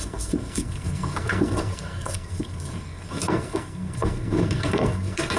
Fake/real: fake